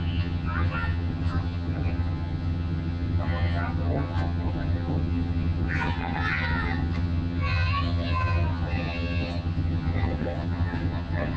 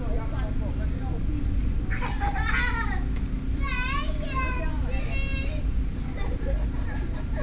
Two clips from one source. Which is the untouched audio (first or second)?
second